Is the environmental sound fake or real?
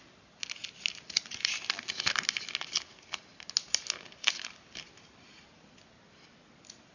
real